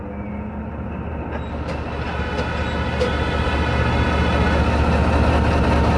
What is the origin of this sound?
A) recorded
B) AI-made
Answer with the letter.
A